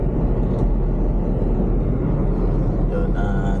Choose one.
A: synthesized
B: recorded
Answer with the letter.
B